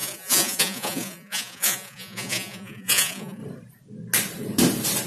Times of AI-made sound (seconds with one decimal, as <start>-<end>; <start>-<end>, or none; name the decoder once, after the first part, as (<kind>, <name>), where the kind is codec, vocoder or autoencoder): 0.0-3.4 (vocoder, Vocos)